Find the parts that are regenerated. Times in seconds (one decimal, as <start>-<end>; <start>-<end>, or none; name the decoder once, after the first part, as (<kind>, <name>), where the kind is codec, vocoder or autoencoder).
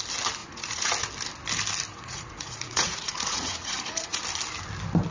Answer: 0.4-0.9 (vocoder, Vocos); 1.9-4.2